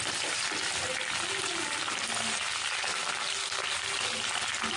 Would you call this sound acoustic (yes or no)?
yes